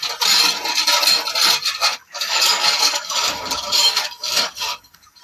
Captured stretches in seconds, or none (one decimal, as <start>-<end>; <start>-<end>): 0.0-1.8